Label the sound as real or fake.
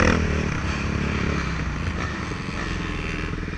real